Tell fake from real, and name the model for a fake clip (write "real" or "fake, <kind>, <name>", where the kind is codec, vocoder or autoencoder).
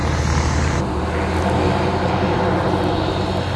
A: real